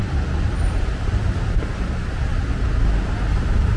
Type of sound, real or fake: real